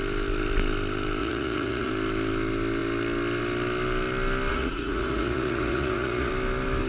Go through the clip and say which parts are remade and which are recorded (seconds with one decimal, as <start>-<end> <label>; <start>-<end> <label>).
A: 0.0-1.2 recorded; 1.2-1.9 remade; 1.9-4.5 recorded; 4.5-6.3 remade; 6.3-6.9 recorded